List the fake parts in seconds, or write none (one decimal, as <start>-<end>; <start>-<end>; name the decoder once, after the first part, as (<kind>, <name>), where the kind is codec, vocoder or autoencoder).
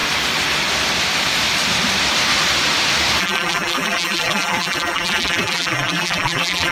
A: 3.2-6.7 (vocoder, BigVGAN v2)